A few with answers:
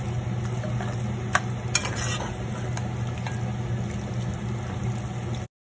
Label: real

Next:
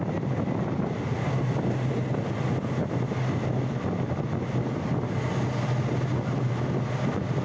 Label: real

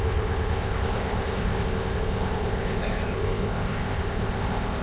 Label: fake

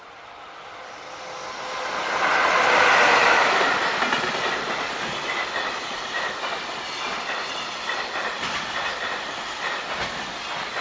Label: real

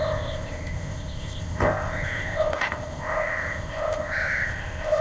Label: fake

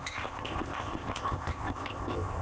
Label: fake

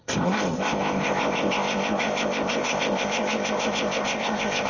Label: fake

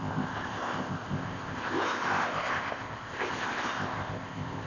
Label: fake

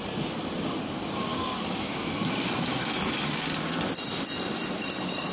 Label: real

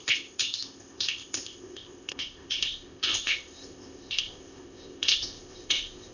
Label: fake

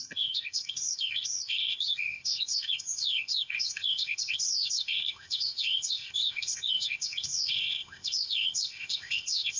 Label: fake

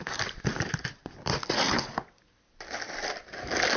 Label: real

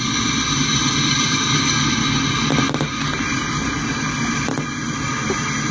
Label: real